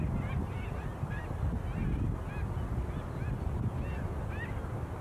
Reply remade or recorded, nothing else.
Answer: recorded